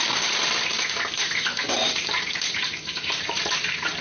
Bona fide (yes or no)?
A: no